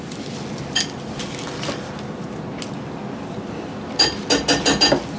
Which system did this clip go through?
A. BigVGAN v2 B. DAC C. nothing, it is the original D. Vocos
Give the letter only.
C